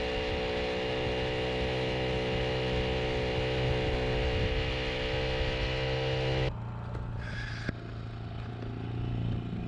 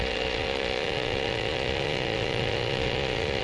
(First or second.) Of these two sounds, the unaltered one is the first